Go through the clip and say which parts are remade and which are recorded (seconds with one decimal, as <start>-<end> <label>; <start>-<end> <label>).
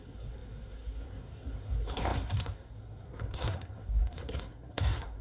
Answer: 0.0-5.2 remade